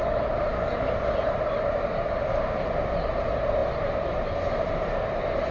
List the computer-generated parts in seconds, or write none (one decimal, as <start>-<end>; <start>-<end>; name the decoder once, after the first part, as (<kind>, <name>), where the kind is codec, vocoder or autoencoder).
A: none